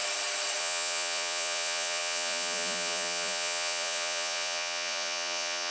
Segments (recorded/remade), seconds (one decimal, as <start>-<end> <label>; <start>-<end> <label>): 0.0-0.6 recorded; 0.6-5.7 remade

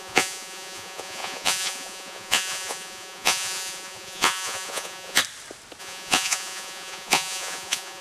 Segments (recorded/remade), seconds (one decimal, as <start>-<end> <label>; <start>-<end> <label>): 0.0-5.2 remade; 5.2-5.8 recorded; 5.8-8.0 remade

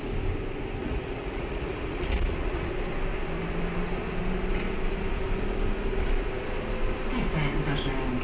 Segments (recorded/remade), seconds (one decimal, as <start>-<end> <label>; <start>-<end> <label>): 0.0-0.8 recorded; 0.8-2.7 remade; 2.7-8.2 recorded

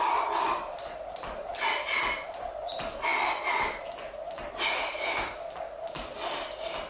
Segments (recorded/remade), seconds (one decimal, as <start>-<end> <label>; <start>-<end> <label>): 0.0-6.9 recorded